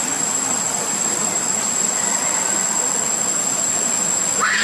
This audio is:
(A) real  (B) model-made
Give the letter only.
A